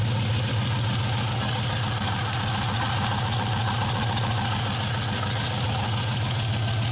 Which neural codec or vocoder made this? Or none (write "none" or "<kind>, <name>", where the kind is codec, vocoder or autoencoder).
none